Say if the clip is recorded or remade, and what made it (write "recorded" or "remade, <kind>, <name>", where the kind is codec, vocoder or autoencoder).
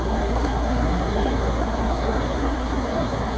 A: remade, codec, SNAC